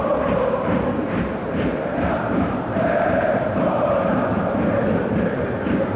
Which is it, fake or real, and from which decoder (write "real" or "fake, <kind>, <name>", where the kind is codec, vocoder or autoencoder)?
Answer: fake, vocoder, BigVGAN v2